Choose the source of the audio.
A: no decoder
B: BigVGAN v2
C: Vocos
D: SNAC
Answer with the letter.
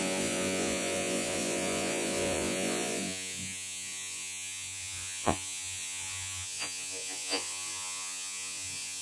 C